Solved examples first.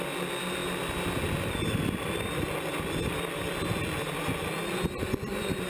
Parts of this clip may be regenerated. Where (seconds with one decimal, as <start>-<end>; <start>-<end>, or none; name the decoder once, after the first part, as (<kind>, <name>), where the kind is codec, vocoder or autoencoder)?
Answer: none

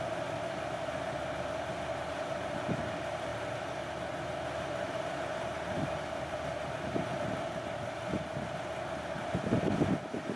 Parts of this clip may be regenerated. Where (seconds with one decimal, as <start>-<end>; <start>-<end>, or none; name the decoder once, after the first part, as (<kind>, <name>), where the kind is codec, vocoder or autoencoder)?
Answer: none

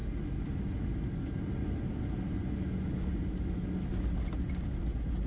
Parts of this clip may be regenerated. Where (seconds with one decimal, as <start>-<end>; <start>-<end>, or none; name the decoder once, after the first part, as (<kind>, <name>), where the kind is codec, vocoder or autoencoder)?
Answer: none